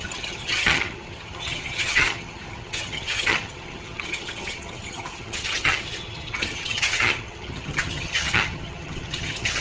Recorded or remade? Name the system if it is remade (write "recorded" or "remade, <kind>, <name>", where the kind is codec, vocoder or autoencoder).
remade, vocoder, HiFi-GAN